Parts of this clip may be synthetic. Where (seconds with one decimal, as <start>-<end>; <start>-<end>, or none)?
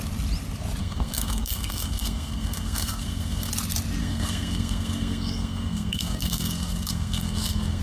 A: 0.8-3.5; 4.0-7.8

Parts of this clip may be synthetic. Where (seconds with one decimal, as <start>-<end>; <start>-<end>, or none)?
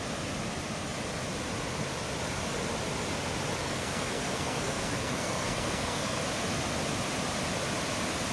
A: 3.6-6.2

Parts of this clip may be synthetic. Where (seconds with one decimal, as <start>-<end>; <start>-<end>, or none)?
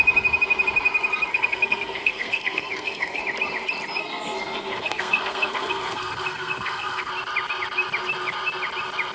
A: 1.3-3.2; 4.0-7.1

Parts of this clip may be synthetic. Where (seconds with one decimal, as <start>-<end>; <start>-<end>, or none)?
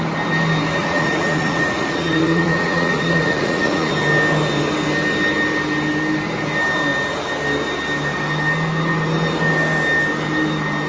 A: 0.8-3.9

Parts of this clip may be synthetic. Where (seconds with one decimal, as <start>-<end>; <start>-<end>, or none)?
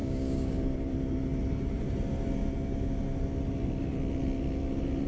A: 0.0-0.6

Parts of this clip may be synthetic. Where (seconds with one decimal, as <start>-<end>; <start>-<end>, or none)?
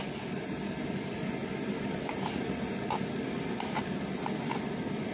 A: none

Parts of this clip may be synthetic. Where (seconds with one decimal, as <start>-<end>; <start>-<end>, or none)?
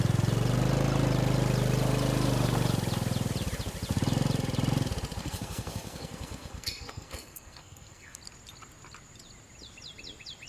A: 5.2-8.2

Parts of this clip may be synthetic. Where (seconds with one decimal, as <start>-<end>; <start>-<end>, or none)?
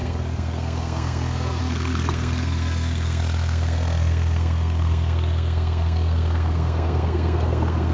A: 0.0-7.9